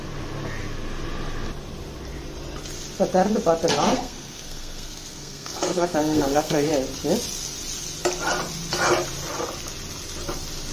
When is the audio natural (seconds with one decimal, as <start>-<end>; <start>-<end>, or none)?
0.0-3.9; 6.7-10.7